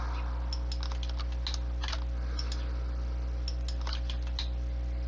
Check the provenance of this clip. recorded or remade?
recorded